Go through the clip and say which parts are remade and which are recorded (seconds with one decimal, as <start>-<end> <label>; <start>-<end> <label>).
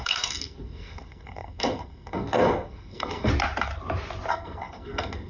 0.0-3.3 remade; 3.3-4.3 recorded; 4.3-5.3 remade